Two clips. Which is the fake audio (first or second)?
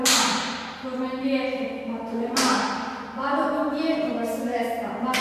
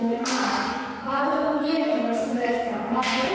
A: second